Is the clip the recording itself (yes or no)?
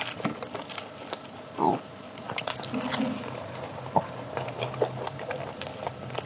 yes